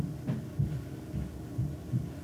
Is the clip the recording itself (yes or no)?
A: yes